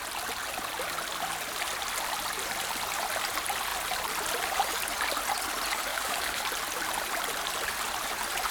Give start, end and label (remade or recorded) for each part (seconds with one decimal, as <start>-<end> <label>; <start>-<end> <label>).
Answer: 0.0-5.9 recorded; 5.9-6.4 remade; 6.4-8.5 recorded